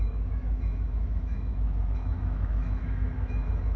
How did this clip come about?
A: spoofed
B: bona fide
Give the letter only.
A